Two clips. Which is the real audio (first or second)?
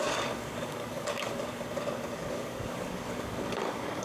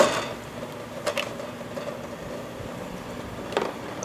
second